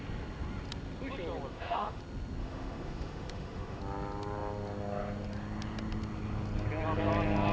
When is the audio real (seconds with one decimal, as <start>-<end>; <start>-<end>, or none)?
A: 0.0-1.5; 2.0-2.4; 3.8-7.5